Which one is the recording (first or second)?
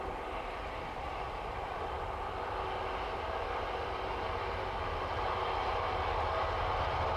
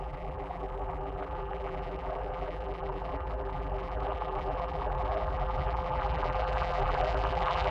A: first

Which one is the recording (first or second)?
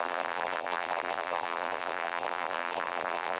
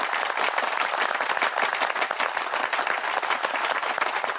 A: second